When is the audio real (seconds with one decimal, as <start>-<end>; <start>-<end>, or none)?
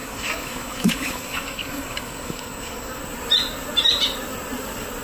3.0-5.0